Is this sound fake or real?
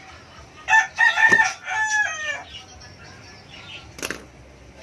real